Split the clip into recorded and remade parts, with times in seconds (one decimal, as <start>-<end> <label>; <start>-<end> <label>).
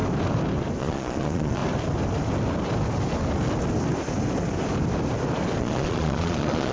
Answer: 0.0-0.8 recorded; 0.8-1.6 remade; 1.6-5.6 recorded; 5.6-6.7 remade